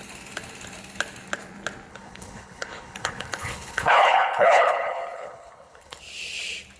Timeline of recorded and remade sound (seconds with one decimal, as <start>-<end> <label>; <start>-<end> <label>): 0.0-1.9 recorded; 1.9-6.0 remade; 6.0-6.8 recorded